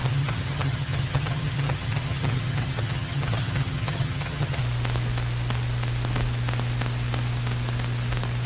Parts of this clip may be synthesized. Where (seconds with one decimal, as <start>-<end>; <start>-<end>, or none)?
0.0-4.6